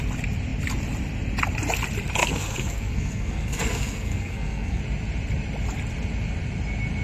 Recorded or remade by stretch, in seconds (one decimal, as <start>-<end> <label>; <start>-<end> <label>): 0.0-2.2 recorded; 2.2-4.8 remade; 4.8-7.0 recorded